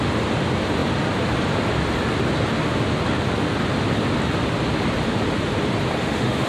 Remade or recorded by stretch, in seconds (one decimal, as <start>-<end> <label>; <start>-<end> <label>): 0.0-6.0 recorded; 6.0-6.5 remade